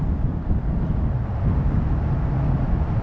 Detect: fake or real real